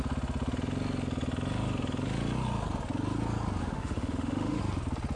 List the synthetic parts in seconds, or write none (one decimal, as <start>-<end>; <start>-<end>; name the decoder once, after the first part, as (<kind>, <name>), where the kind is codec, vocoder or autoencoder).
3.6-4.6 (autoencoder, DAC-VAE)